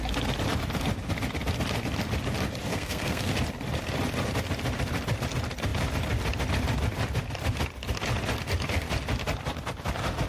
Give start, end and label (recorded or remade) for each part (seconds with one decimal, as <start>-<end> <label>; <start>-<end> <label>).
0.0-2.7 recorded; 2.7-3.3 remade; 3.3-10.3 recorded